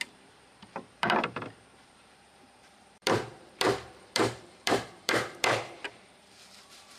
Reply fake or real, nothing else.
fake